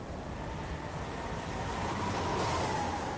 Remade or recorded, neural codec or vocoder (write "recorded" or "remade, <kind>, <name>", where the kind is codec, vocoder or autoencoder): recorded